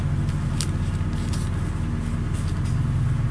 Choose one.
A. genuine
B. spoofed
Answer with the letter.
A